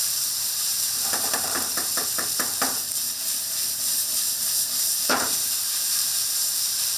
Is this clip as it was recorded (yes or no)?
no